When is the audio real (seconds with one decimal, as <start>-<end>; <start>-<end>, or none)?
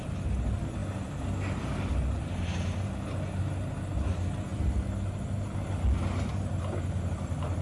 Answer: 0.0-7.6